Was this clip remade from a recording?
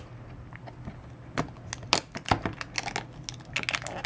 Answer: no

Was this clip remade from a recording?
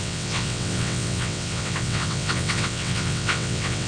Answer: yes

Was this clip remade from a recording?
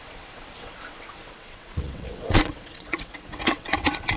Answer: yes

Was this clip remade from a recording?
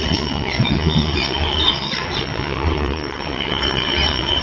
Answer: yes